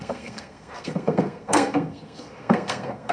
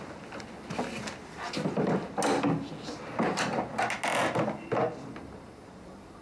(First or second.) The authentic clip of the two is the second